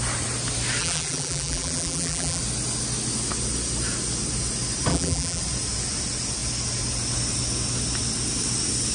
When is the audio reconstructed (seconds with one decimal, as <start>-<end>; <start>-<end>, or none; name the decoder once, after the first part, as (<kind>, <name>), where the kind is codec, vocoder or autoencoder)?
0.8-2.4 (vocoder, BigVGAN v2); 4.9-5.4